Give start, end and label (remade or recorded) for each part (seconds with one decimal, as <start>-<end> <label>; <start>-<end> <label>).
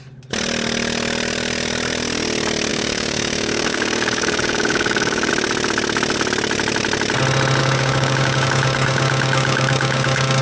0.0-2.7 recorded; 2.7-5.3 remade; 5.3-7.6 recorded; 7.6-10.4 remade